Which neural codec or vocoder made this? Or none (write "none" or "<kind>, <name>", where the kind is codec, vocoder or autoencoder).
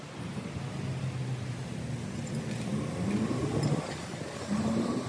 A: none